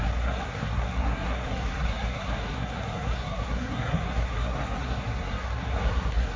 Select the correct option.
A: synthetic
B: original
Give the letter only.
A